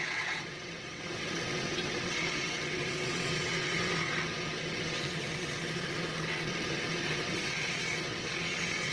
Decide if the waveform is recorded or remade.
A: remade